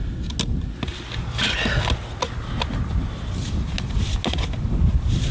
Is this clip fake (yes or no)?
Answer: no